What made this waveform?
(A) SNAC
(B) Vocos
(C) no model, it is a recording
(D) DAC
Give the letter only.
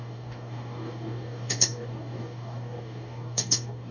D